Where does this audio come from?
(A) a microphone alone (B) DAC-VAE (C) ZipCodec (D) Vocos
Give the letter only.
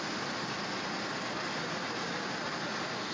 A